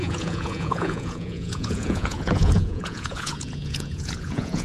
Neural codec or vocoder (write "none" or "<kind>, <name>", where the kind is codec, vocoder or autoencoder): vocoder, Vocos